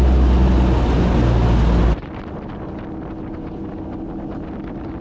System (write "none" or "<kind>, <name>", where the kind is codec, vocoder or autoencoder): none